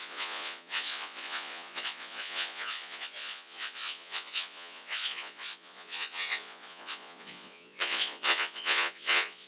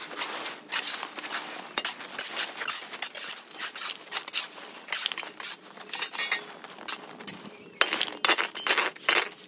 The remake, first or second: first